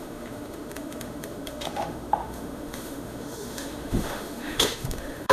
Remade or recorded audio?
remade